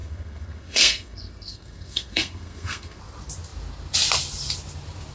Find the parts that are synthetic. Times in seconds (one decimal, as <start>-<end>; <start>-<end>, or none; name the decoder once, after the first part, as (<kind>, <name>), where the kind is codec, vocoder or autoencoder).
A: 0.0-3.0 (codec, SNAC)